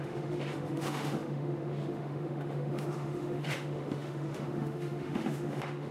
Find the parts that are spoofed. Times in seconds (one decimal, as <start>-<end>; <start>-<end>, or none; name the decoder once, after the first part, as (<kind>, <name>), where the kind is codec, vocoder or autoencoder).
0.0-5.9 (autoencoder, DAC-VAE)